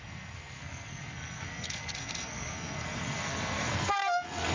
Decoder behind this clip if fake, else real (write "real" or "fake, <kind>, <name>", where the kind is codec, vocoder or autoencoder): fake, codec, SNAC